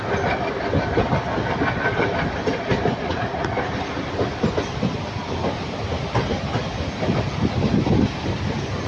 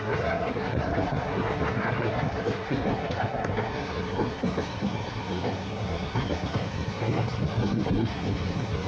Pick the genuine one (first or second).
first